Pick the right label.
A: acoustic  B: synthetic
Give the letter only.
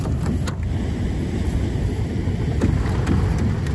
A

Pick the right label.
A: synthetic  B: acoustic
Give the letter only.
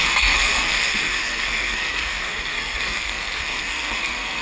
A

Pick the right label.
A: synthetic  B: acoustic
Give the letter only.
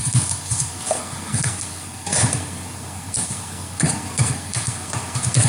A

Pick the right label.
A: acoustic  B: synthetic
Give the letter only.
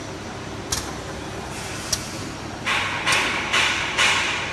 A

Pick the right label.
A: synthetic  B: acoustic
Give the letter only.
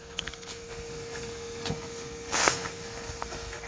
A